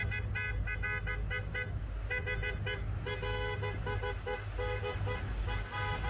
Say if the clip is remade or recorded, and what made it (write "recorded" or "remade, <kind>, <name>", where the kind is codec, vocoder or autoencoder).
recorded